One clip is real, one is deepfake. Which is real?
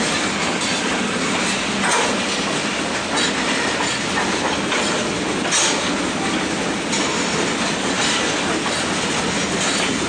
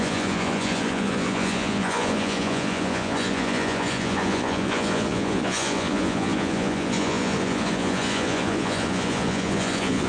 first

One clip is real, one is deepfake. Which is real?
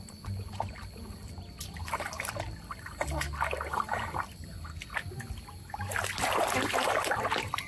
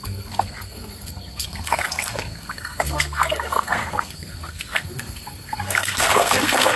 first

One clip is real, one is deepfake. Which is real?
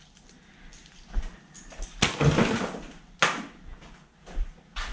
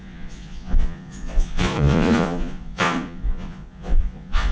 first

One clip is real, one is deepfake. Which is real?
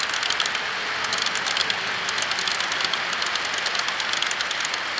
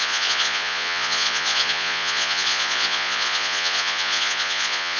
first